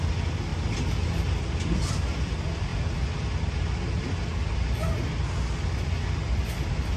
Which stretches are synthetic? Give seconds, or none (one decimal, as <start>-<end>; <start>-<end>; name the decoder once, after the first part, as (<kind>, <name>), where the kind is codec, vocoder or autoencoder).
none